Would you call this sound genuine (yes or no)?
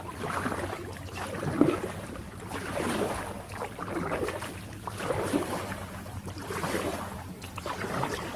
yes